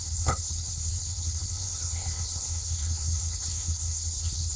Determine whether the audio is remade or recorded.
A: remade